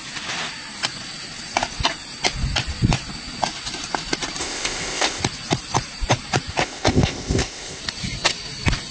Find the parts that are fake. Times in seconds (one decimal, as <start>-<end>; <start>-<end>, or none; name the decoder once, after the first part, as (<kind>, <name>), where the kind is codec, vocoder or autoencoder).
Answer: 4.4-5.2 (codec, ZipCodec); 6.6-7.8